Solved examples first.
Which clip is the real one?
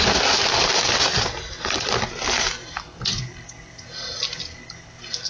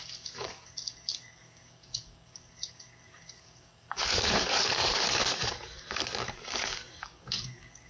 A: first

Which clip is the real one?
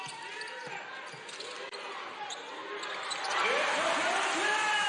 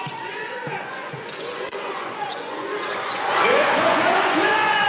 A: first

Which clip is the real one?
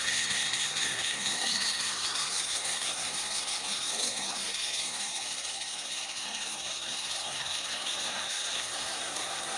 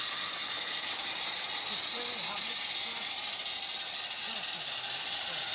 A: second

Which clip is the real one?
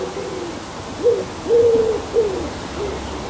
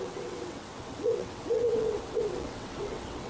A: first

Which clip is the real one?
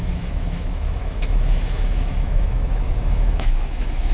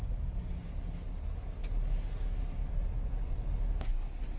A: second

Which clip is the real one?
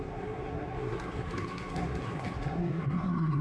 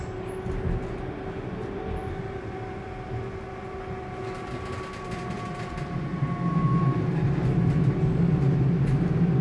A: second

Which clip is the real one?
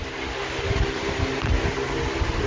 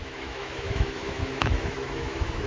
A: first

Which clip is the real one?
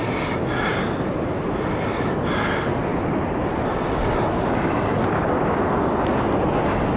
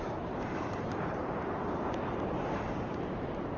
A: first